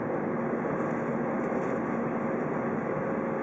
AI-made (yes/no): no